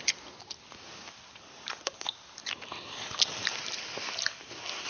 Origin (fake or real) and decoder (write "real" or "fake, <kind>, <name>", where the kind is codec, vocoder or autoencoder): real